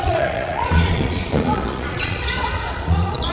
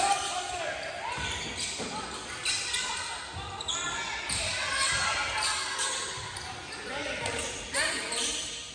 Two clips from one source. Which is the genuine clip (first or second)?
second